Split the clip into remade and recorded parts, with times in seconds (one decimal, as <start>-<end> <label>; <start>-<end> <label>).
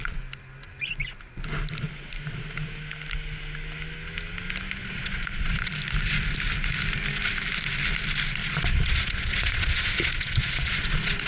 0.0-4.8 recorded; 4.8-5.7 remade; 5.7-8.4 recorded; 8.4-11.3 remade